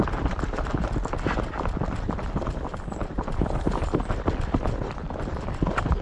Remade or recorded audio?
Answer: remade